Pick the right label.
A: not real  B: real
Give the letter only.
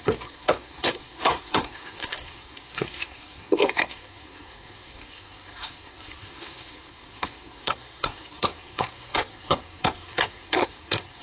A